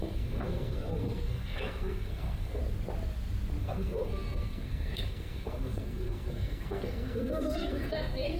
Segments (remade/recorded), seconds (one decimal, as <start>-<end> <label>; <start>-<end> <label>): 0.0-2.6 remade; 2.6-3.6 recorded; 3.6-8.4 remade